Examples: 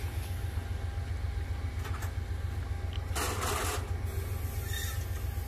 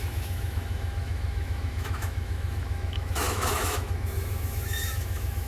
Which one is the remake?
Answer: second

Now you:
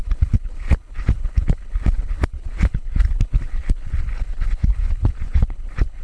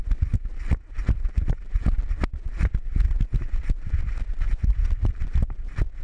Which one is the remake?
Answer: first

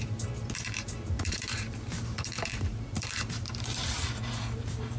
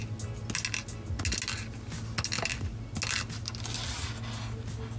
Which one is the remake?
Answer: first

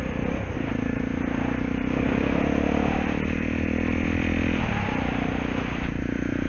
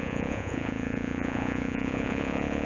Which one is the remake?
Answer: second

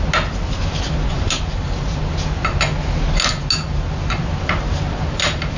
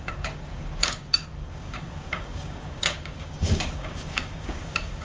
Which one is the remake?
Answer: second